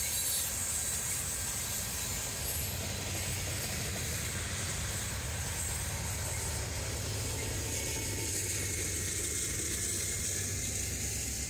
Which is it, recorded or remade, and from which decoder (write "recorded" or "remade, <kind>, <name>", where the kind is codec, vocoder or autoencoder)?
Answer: recorded